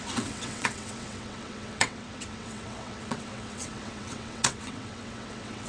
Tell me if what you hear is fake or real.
fake